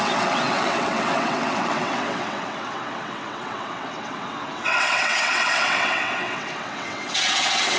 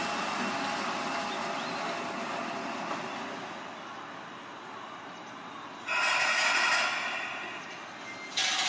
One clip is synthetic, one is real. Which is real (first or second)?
second